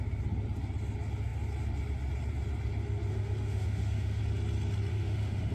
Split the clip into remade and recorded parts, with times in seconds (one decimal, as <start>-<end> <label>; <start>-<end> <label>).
0.0-3.1 recorded; 3.1-4.2 remade; 4.2-4.9 recorded; 4.9-5.5 remade